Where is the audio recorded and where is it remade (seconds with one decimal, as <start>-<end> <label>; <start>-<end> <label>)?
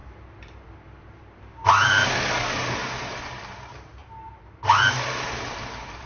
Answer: 0.0-6.1 recorded